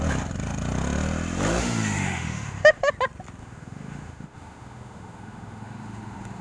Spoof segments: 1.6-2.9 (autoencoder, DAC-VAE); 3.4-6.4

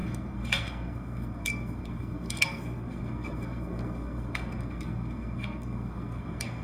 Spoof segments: 0.0-6.6 (codec, SNAC)

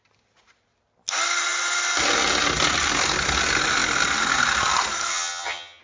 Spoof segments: 5.1-5.8 (vocoder, HiFi-GAN)

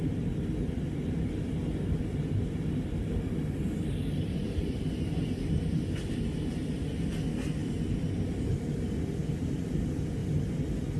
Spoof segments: none

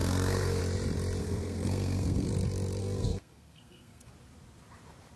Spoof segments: 0.0-0.6 (codec, SNAC); 1.2-2.3; 2.8-4.1

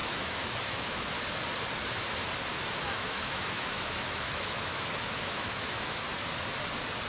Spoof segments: 0.0-1.1 (autoencoder, DAC-VAE); 2.5-6.0

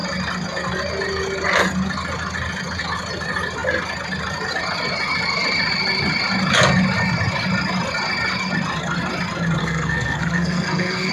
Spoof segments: 9.6-11.1 (codec, SNAC)

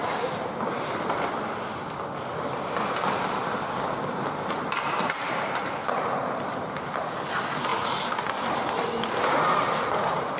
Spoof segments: none